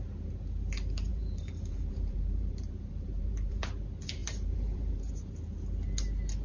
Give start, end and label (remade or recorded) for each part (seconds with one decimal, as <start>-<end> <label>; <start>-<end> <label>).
0.0-1.1 recorded; 1.1-3.6 remade; 3.6-4.2 recorded; 4.2-5.1 remade; 5.1-6.4 recorded